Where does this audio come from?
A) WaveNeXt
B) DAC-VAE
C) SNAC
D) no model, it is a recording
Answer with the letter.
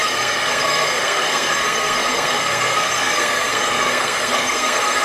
C